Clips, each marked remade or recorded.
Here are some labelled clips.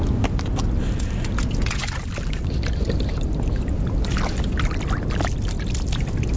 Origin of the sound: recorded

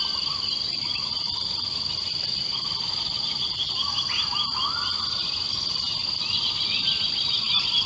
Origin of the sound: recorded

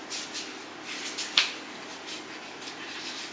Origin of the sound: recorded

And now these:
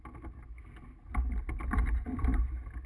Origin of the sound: recorded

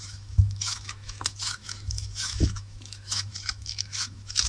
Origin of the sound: remade